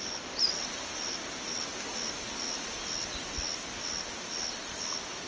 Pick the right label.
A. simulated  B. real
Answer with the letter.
B